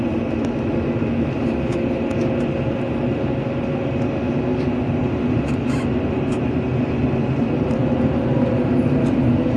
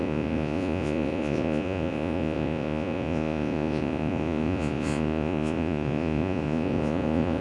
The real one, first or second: first